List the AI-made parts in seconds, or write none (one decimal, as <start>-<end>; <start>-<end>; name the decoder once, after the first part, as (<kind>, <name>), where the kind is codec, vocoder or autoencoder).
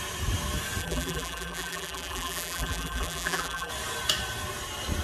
0.8-3.7 (vocoder, BigVGAN v2)